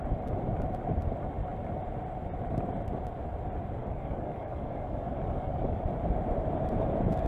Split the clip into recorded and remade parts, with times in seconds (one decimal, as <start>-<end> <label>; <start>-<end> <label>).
0.0-3.8 recorded; 3.8-5.8 remade; 5.8-7.3 recorded